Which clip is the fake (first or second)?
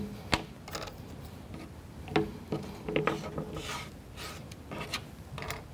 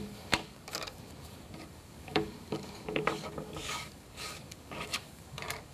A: second